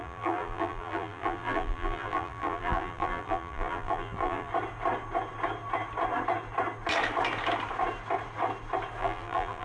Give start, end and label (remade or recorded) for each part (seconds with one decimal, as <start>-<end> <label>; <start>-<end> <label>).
0.0-4.5 remade; 4.5-9.0 recorded; 9.0-9.6 remade